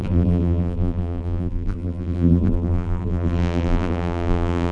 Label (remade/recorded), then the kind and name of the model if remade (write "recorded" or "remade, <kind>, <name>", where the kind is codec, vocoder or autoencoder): remade, vocoder, BigVGAN v2